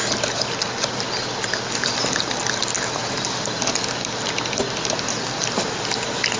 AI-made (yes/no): no